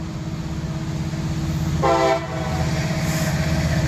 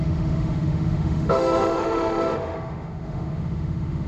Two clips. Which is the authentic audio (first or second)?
first